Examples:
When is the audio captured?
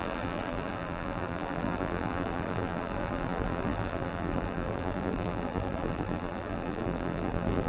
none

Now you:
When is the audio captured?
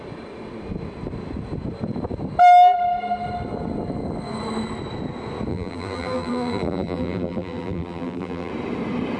0.0-5.5; 8.5-9.2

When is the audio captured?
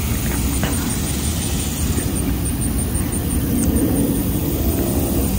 0.0-5.4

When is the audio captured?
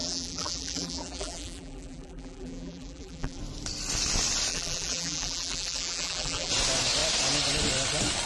3.4-4.5; 6.5-8.3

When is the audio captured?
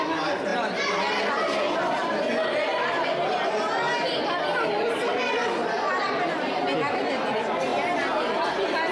0.0-8.9